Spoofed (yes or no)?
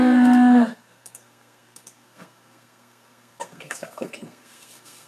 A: yes